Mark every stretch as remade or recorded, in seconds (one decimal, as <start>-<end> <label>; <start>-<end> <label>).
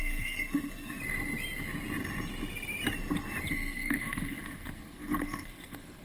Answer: 0.0-1.0 remade; 1.0-3.5 recorded; 3.5-6.0 remade